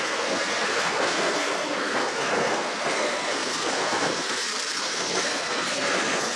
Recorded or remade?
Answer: remade